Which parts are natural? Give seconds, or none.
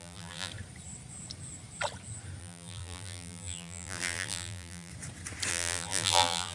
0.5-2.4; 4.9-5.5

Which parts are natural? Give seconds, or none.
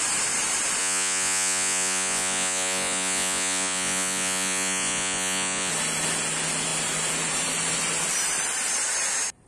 0.0-0.8; 5.7-9.5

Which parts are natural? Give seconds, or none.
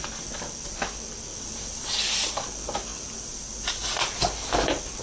0.0-5.0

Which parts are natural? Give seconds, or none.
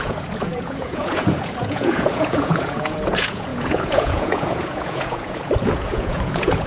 none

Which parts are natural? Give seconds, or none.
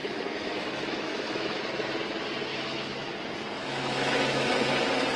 1.6-2.5; 3.1-3.6; 4.5-5.2